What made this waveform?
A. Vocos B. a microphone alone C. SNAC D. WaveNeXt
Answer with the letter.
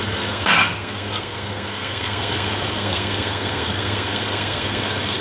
C